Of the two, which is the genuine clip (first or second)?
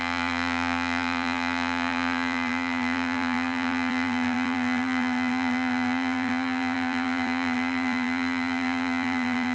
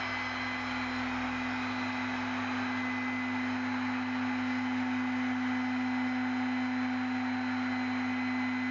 second